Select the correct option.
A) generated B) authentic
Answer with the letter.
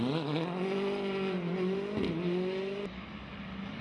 B